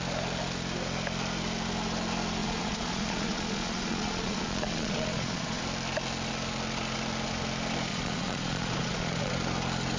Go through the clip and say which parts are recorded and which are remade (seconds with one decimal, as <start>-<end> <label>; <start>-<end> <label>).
0.0-2.4 recorded; 2.4-5.6 remade; 5.6-7.9 recorded; 7.9-9.3 remade; 9.3-10.0 recorded